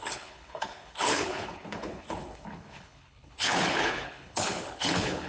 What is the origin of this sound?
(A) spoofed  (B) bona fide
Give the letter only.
A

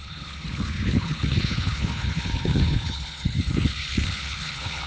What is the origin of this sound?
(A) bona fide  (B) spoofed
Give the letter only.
B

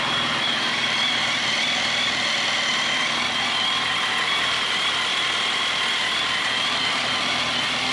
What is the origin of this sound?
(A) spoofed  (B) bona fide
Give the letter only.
B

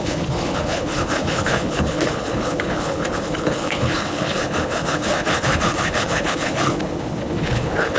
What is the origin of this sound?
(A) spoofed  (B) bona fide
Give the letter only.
A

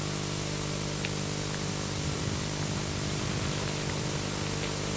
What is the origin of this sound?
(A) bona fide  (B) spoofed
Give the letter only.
A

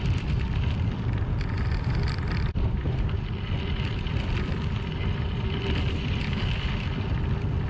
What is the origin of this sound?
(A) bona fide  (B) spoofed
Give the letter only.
A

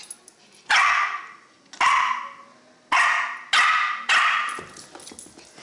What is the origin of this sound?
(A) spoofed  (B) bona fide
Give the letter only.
B